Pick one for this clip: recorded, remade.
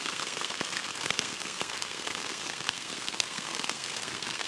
remade